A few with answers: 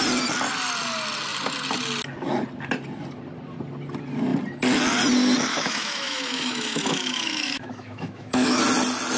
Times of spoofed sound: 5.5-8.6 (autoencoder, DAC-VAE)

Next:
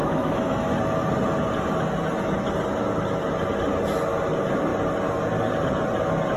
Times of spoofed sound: 0.0-0.7 (autoencoder, DAC-VAE)

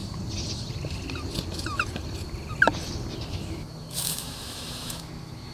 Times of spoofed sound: 3.3-5.5 (autoencoder, DAC-VAE)

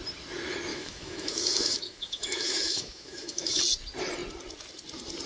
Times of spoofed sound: 0.7-3.6 (autoencoder, DAC-VAE)

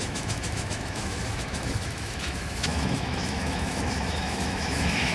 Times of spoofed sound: 0.0-5.1 (autoencoder, DAC-VAE)

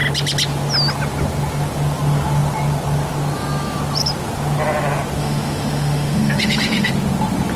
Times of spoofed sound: 5.2-6.9 (autoencoder, DAC-VAE)